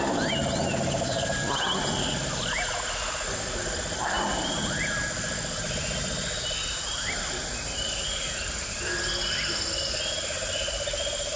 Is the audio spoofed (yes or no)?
no